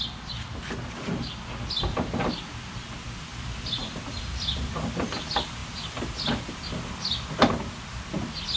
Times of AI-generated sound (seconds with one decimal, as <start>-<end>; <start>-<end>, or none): none